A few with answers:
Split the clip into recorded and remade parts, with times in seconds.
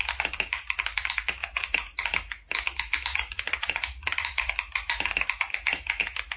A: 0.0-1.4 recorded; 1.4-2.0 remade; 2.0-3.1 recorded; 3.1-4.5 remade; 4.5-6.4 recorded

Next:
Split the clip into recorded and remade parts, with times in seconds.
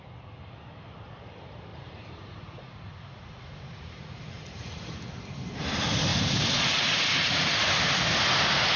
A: 0.0-1.7 recorded; 1.7-5.0 remade; 5.0-6.1 recorded; 6.1-7.7 remade; 7.7-8.8 recorded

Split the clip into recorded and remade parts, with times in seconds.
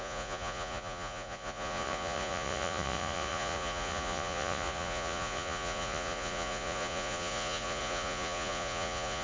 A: 0.0-9.2 remade